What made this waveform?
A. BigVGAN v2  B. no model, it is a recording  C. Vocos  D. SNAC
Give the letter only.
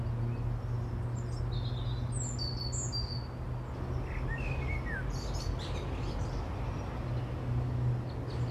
B